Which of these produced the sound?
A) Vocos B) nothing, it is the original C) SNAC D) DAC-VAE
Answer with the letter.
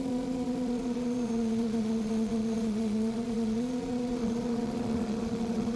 A